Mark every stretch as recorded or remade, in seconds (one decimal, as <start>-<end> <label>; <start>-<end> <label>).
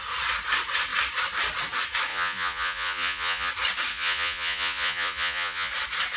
0.0-2.1 recorded; 2.1-3.5 remade; 3.5-3.9 recorded; 3.9-5.7 remade; 5.7-6.2 recorded